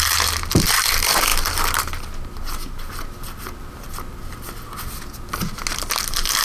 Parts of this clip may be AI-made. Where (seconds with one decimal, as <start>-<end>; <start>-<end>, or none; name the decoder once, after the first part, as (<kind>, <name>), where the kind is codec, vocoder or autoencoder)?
none